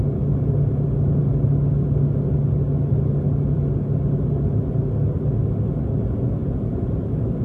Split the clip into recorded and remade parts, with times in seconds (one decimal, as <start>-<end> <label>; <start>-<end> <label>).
0.0-7.4 recorded